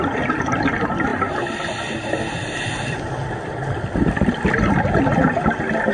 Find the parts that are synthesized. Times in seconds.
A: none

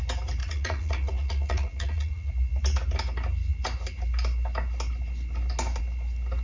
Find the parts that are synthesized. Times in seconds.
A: 0.4-2.3 (vocoder, Vocos)

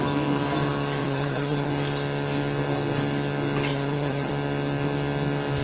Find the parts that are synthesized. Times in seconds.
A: 1.0-1.7 (vocoder, HiFi-GAN); 3.7-4.3

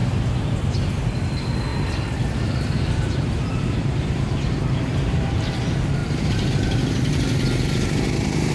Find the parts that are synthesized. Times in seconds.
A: 0.0-0.7 (vocoder, BigVGAN v2); 1.7-5.6; 6.0-6.5

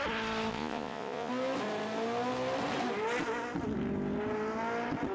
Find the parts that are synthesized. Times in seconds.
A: 0.5-1.3 (vocoder, Vocos)

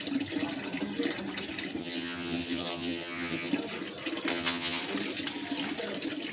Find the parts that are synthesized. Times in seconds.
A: 1.8-3.5 (vocoder, HiFi-GAN); 4.3-4.8